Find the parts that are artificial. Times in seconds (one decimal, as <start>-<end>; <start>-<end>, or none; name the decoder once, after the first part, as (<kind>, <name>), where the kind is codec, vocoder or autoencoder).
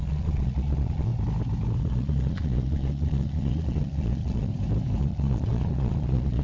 0.0-1.1 (vocoder, Vocos); 1.8-4.5; 5.0-6.4